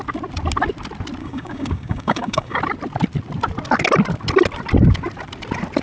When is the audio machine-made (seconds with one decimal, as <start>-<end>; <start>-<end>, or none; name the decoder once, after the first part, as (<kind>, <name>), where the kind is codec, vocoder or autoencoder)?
1.2-2.6 (codec, DAC)